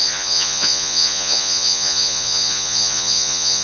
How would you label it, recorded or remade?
remade